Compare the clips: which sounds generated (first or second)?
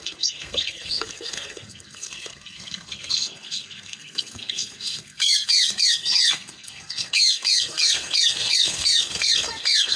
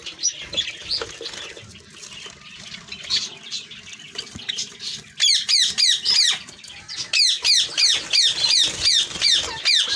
first